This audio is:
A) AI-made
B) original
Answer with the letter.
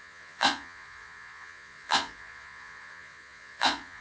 A